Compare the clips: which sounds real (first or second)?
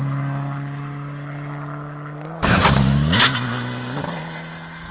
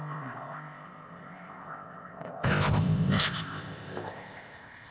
first